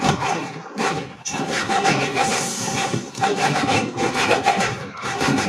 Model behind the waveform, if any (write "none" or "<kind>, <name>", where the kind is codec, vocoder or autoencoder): codec, SNAC